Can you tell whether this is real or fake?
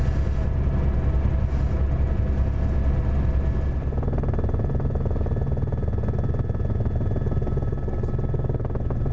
real